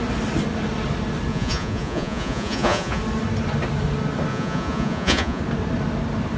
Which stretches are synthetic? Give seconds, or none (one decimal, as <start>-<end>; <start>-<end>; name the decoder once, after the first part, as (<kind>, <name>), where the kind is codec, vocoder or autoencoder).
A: 1.3-3.0 (vocoder, Vocos); 4.3-5.4